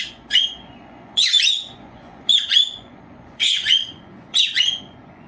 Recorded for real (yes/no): no